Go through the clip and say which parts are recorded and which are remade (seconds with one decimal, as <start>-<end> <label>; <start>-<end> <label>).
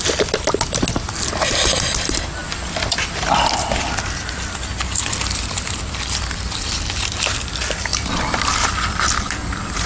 0.0-2.4 recorded; 2.4-7.4 remade; 7.4-7.9 recorded; 7.9-8.5 remade; 8.5-9.9 recorded